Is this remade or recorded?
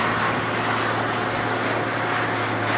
recorded